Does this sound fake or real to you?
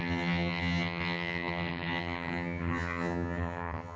fake